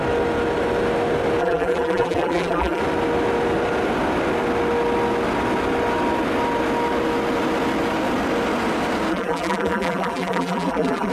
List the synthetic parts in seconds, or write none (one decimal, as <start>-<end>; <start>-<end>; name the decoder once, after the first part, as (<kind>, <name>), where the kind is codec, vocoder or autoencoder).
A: 1.4-2.8 (vocoder, BigVGAN v2); 9.1-11.1